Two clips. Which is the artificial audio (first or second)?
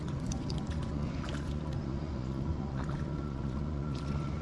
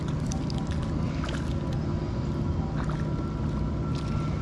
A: first